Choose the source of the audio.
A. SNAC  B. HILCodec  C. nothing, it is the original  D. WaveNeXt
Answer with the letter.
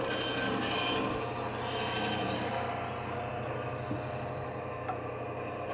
C